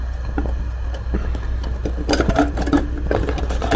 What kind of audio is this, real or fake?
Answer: real